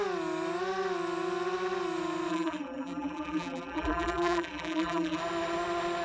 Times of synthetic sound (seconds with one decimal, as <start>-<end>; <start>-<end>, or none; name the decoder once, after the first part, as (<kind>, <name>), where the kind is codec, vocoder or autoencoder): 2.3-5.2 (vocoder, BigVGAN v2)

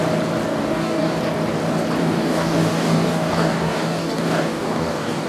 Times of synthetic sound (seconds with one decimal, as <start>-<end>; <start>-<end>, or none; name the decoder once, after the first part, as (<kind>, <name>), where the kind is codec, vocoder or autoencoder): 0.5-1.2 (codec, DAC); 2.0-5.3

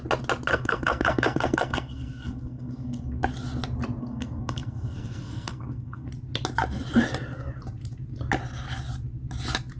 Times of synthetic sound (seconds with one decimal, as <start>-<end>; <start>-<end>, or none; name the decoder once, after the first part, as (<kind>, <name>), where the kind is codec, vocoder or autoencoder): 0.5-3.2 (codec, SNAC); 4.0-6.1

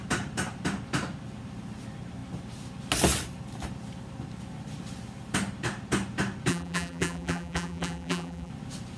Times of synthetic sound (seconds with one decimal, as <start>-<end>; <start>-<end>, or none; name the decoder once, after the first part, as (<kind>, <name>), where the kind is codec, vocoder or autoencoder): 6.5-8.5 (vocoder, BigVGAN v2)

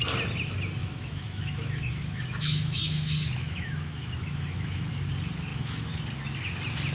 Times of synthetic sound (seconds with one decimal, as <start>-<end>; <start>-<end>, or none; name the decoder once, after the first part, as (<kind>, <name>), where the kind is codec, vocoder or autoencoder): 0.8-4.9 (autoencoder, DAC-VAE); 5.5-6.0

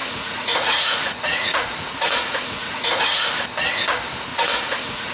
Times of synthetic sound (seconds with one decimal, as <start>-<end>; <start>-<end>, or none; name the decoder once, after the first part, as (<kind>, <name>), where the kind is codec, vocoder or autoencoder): 0.0-3.0 (vocoder, Vocos); 4.3-5.1

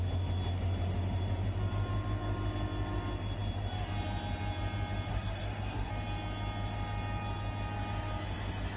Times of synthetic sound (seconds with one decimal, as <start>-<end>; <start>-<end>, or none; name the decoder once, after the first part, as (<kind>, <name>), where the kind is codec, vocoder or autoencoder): 5.1-5.9 (codec, SNAC)